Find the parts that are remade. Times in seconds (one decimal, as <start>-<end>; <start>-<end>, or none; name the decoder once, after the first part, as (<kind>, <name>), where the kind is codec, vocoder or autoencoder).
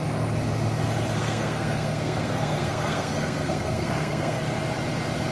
1.2-4.4 (codec, SNAC)